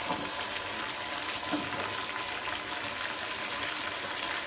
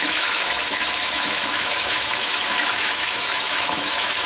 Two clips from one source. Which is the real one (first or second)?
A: first